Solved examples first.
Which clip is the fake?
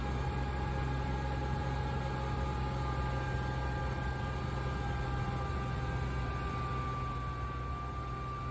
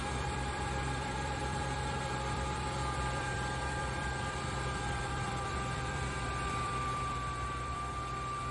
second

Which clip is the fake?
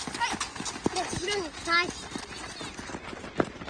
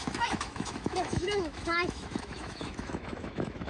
second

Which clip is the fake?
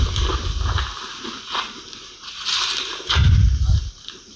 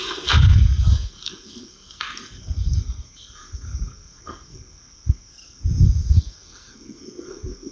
second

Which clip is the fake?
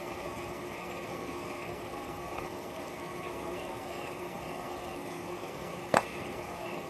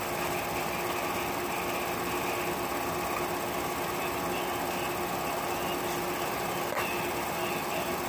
first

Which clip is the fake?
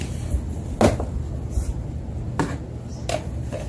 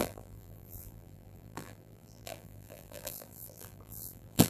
second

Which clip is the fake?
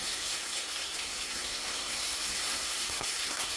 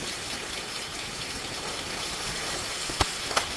first